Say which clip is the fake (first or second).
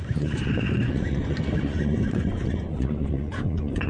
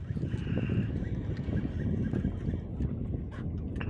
first